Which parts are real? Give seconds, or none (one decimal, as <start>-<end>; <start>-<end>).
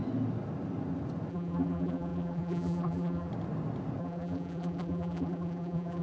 0.0-1.3; 3.3-4.0